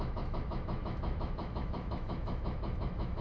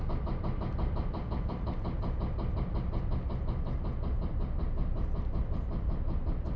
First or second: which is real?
second